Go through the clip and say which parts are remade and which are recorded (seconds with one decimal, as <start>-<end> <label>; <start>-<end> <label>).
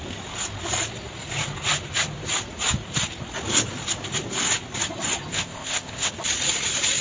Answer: 0.0-5.3 recorded; 5.3-6.1 remade; 6.1-7.0 recorded